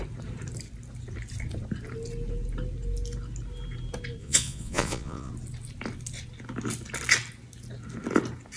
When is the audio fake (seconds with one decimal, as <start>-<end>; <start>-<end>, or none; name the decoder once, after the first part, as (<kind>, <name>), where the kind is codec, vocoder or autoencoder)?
4.2-5.3 (vocoder, Vocos)